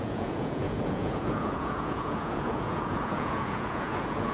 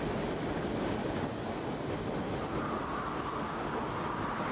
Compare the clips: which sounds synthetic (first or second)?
first